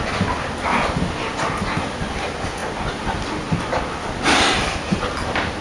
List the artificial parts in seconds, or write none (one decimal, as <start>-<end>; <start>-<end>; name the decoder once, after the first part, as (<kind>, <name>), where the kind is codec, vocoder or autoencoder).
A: none